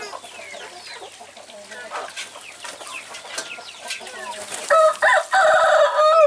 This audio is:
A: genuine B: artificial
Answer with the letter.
A